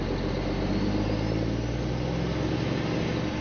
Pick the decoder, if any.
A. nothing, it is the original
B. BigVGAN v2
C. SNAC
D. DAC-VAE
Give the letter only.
A